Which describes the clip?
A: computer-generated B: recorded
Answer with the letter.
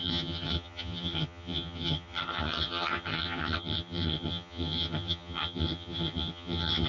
A